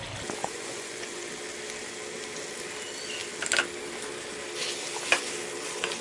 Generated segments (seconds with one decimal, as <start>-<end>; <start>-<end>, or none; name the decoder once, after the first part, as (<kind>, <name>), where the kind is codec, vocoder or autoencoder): 0.4-1.3 (vocoder, Vocos)

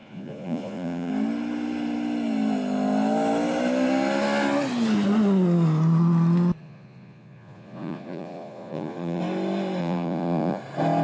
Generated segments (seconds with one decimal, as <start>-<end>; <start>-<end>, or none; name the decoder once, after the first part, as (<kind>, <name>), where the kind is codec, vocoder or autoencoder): 0.0-1.1 (vocoder, Vocos); 6.6-9.2; 9.8-10.6

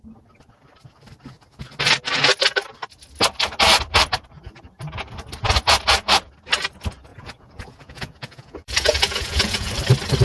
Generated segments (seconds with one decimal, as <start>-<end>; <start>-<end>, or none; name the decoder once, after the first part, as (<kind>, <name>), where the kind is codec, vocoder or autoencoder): 7.1-9.7 (vocoder, Vocos)

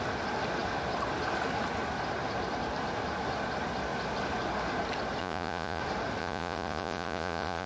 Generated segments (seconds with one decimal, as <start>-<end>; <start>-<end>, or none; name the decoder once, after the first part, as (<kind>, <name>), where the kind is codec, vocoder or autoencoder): 5.2-5.8 (vocoder, Vocos); 6.2-7.7